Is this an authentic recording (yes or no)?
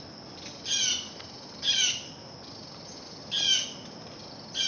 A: yes